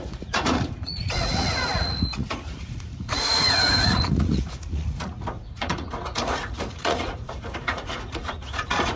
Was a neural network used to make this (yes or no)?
yes